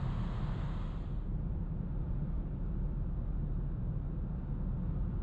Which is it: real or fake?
real